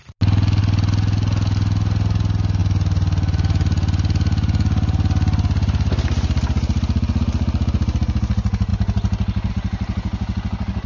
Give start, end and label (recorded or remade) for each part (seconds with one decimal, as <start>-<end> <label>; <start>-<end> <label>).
0.0-10.9 recorded